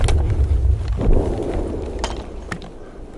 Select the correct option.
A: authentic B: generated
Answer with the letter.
A